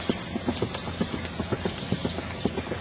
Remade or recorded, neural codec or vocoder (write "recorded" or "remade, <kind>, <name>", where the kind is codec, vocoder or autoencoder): recorded